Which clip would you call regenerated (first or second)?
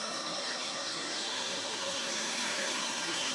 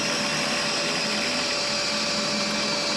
first